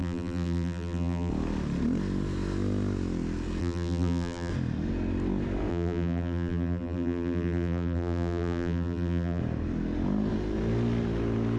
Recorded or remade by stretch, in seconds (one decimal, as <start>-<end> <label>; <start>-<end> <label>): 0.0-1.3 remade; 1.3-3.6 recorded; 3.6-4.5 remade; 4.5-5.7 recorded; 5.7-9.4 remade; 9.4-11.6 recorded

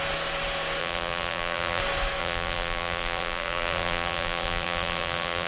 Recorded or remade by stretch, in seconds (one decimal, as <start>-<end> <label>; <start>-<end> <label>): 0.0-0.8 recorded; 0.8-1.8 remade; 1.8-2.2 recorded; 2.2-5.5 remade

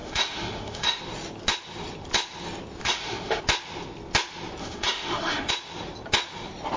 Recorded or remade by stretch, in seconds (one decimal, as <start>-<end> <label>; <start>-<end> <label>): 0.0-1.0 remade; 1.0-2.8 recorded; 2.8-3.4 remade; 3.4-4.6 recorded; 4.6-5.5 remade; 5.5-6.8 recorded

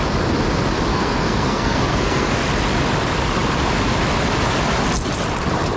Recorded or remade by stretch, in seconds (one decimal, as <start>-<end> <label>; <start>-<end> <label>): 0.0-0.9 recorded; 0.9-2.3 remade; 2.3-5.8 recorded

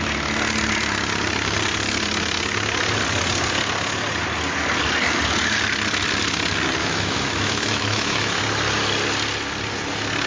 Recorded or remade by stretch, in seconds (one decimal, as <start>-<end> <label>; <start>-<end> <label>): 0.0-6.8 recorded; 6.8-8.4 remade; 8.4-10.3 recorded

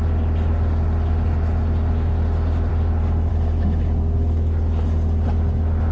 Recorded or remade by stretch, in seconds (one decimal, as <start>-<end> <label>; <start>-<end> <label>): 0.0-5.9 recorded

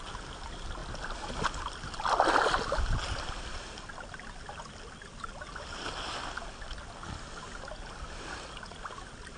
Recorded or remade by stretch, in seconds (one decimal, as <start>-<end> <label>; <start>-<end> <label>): 0.0-9.4 recorded